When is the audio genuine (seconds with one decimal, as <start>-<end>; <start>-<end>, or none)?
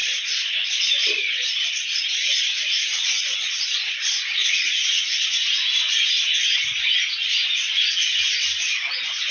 5.2-9.3